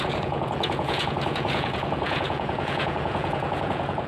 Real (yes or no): no